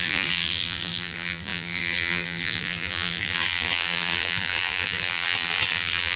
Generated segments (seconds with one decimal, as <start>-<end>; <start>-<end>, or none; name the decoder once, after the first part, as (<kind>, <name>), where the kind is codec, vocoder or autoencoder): 0.0-6.2 (vocoder, BigVGAN v2)